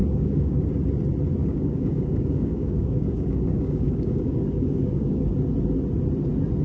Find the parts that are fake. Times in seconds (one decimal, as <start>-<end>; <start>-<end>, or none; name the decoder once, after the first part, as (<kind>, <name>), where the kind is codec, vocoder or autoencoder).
0.0-0.6 (codec, DAC); 1.4-5.3